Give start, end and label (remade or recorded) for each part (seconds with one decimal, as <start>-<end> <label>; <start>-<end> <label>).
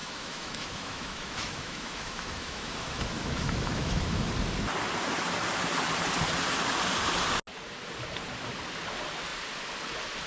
0.0-4.3 remade; 4.3-10.3 recorded